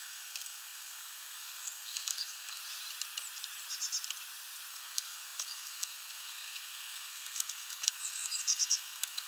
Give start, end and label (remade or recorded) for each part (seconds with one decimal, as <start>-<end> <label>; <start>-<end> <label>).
0.0-2.6 remade; 2.6-4.7 recorded; 4.7-9.3 remade